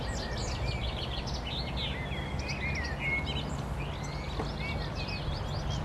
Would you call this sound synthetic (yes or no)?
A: no